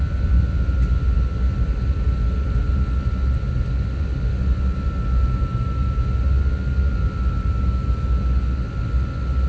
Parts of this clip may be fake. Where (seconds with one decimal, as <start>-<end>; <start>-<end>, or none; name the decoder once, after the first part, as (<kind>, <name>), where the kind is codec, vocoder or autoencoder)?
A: none